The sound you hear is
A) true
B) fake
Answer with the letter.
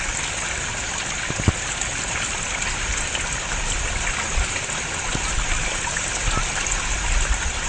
A